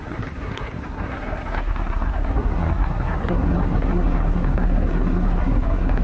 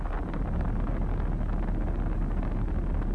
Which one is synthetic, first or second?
first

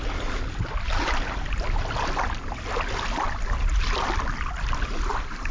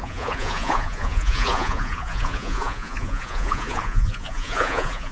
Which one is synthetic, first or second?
second